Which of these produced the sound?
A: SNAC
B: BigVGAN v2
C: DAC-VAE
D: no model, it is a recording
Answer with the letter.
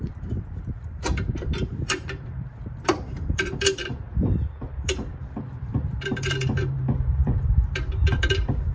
B